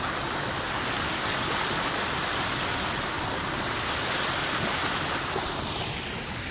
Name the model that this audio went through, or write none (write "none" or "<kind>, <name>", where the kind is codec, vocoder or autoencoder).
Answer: none